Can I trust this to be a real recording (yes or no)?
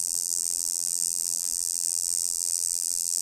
no